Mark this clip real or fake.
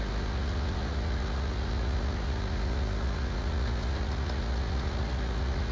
fake